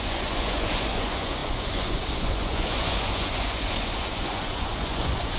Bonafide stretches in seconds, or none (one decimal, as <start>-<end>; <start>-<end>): none